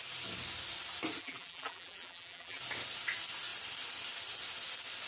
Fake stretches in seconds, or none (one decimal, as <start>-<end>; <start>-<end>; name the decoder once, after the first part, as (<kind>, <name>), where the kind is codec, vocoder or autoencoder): 1.2-2.6 (vocoder, BigVGAN v2)